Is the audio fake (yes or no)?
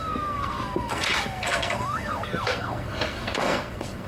yes